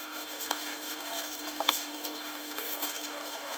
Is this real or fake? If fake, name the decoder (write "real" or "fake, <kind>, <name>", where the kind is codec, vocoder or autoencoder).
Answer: fake, codec, DAC